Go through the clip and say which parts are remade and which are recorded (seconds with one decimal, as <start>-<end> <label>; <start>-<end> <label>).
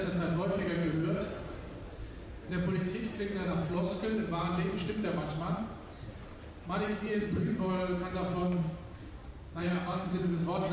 0.0-4.6 recorded; 4.6-7.6 remade; 7.6-8.4 recorded; 8.4-9.9 remade; 9.9-10.7 recorded